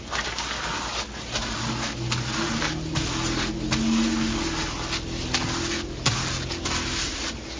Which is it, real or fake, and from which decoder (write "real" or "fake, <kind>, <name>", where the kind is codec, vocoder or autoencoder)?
real